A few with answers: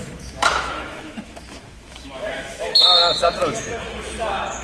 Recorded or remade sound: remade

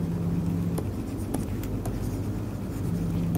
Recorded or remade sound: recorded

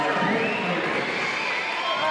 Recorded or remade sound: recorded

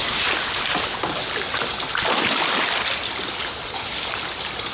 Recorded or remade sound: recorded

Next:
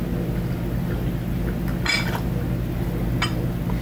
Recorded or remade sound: recorded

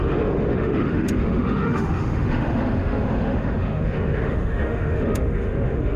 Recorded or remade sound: remade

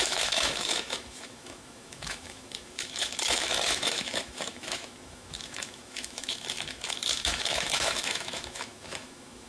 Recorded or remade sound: remade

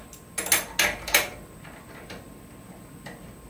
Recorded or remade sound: recorded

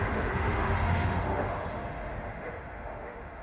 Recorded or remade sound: remade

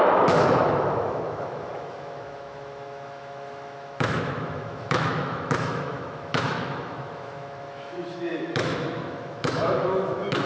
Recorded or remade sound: remade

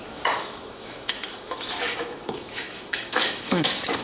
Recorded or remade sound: remade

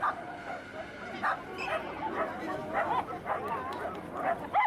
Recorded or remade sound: recorded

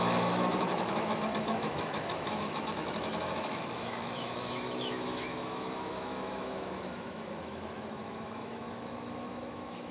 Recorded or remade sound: remade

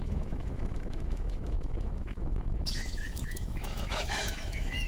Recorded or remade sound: remade